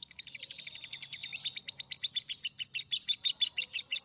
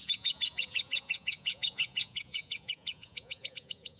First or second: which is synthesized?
second